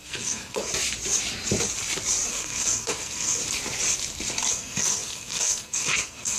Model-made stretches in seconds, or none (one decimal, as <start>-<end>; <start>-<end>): 0.0-0.7; 2.3-3.4; 4.5-6.4

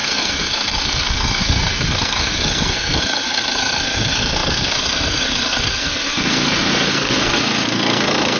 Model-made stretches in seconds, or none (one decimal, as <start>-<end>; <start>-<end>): 0.0-8.4

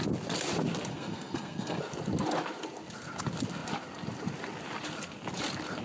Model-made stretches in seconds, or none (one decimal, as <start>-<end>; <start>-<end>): 0.9-1.8

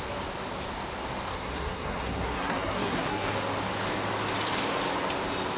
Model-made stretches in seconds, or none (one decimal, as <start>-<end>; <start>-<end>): 1.3-3.3